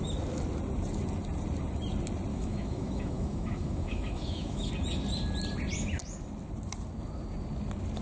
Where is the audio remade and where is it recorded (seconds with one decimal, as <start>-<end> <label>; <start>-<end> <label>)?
0.0-2.3 recorded; 2.3-4.7 remade; 4.7-8.0 recorded